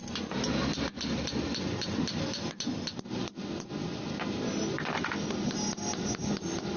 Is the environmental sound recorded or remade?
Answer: recorded